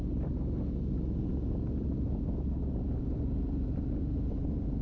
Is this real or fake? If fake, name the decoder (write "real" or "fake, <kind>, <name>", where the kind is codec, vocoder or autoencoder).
real